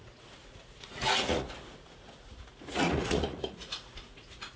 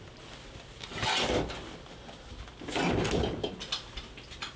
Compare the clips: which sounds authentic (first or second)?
second